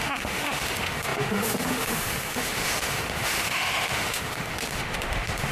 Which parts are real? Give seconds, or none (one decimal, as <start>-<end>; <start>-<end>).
none